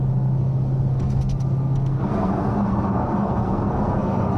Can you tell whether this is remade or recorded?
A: remade